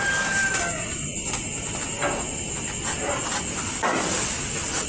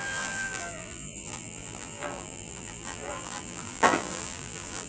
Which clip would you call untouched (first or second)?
first